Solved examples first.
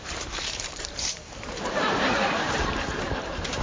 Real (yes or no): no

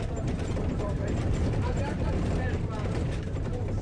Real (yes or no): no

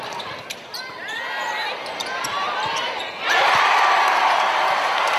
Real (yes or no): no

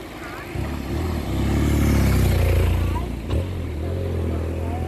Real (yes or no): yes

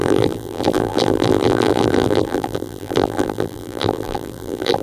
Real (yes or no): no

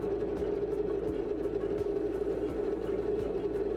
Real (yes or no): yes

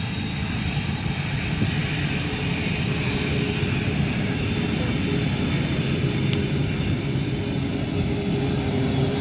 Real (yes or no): yes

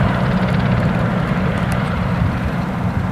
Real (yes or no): no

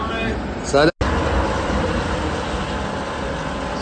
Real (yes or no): yes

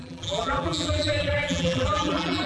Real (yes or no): no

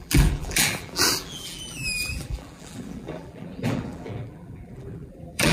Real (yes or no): no